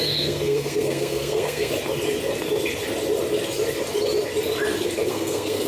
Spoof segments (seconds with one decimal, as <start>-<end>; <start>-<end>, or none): 0.0-1.7; 5.1-5.7